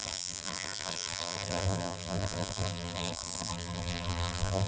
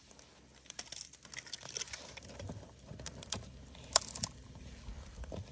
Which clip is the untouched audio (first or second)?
second